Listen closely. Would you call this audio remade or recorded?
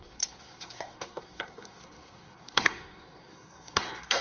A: remade